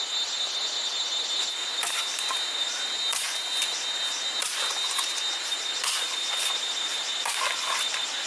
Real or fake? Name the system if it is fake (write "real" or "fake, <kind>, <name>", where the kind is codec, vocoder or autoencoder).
fake, vocoder, BigVGAN v2